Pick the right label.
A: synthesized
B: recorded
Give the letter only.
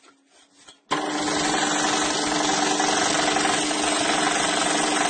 B